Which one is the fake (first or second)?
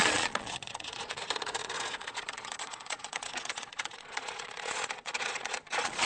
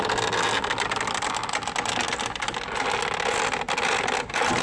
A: first